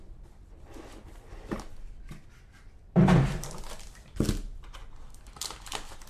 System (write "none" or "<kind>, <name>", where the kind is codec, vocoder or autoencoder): none